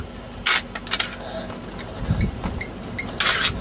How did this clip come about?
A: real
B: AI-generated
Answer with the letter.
A